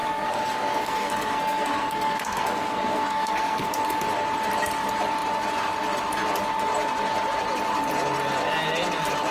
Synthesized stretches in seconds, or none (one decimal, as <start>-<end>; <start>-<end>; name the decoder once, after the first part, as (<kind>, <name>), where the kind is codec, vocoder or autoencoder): 0.0-3.8 (codec, SNAC)